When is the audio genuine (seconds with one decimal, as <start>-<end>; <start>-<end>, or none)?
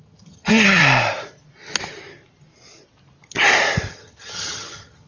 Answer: 0.8-3.9